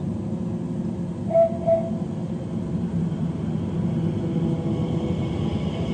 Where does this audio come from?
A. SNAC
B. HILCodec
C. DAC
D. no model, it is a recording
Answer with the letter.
D